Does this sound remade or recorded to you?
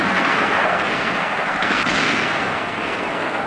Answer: remade